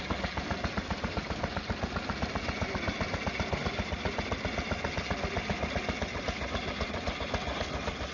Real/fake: real